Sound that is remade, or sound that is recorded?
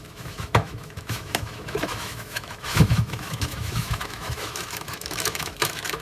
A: remade